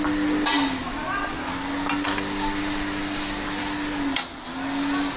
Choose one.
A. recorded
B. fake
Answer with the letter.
A